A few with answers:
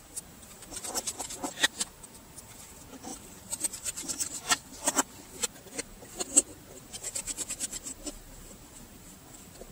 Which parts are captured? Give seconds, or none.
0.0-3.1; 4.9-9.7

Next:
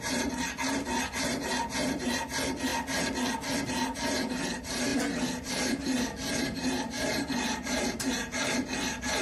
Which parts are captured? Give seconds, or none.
2.7-3.6

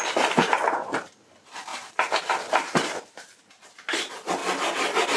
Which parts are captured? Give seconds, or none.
4.4-5.2

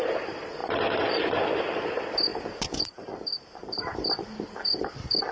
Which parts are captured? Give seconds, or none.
0.0-2.3; 3.8-5.3

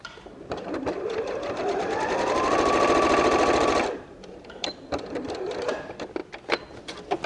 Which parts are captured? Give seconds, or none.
6.2-6.8

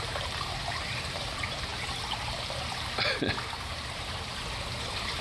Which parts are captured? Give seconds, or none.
1.7-4.8

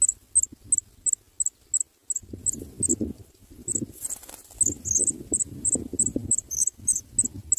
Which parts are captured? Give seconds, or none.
0.0-2.9; 4.3-5.0; 7.0-7.6